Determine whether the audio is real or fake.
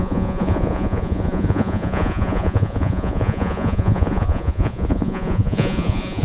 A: fake